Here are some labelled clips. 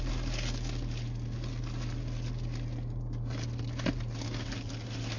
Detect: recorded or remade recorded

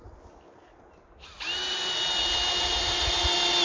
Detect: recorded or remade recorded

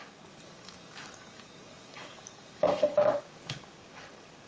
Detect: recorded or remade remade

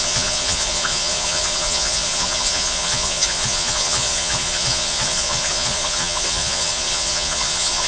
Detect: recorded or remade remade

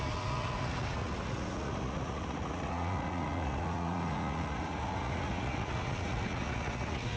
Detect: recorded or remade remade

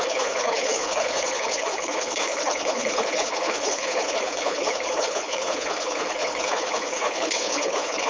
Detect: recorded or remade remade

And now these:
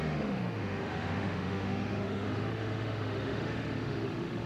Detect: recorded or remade remade